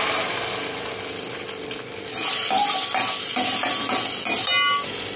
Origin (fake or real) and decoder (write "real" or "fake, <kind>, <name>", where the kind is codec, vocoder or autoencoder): real